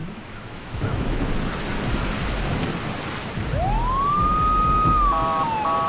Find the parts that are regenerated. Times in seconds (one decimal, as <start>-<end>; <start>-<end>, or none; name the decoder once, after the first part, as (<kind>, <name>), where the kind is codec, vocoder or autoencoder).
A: 0.0-1.2 (autoencoder, DAC-VAE)